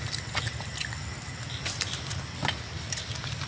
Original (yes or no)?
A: yes